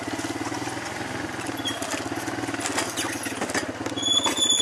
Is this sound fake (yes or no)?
no